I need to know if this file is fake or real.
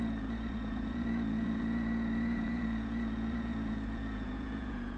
fake